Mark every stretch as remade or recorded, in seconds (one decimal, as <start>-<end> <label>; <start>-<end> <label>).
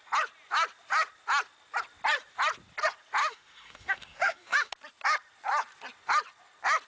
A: 0.0-3.2 recorded; 3.2-4.7 remade; 4.7-6.9 recorded